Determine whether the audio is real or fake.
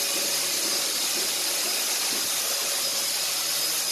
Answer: real